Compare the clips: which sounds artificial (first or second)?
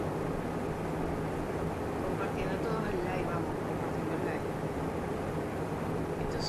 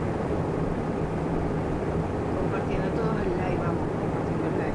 second